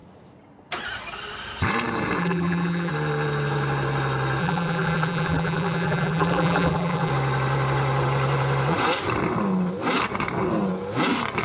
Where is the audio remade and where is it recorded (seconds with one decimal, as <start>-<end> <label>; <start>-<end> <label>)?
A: 0.0-2.2 recorded; 2.2-2.9 remade; 2.9-4.4 recorded; 4.4-7.1 remade; 7.1-11.4 recorded